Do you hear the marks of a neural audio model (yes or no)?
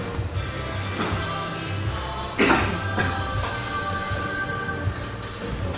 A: no